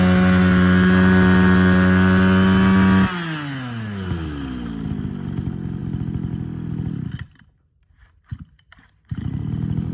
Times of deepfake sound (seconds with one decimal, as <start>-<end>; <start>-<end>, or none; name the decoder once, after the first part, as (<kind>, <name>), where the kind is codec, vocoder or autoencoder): none